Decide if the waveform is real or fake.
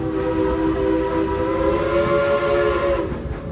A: real